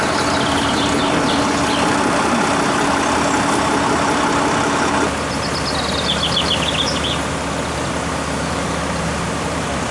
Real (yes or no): yes